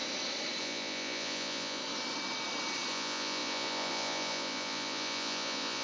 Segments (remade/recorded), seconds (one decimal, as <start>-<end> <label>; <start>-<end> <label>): 0.0-0.6 recorded; 0.6-1.8 remade; 1.8-2.9 recorded; 2.9-5.8 remade